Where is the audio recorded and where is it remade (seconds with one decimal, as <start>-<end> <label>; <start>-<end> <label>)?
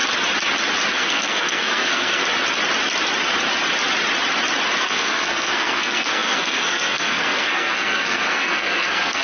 0.0-0.9 recorded; 0.9-2.2 remade; 2.2-4.8 recorded; 4.8-9.2 remade